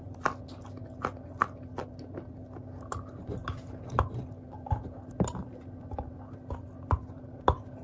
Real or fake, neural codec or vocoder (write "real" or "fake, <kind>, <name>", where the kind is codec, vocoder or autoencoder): real